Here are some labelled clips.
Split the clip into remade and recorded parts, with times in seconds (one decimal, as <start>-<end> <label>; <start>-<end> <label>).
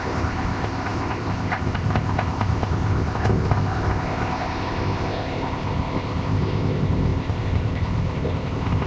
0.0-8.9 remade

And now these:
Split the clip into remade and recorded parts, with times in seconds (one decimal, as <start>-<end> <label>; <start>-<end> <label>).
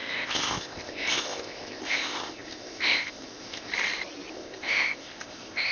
0.0-3.7 remade; 3.7-4.3 recorded; 4.3-5.7 remade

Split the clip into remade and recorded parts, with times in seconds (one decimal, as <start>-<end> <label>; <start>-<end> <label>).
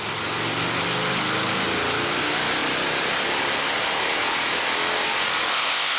0.0-5.5 recorded; 5.5-6.0 remade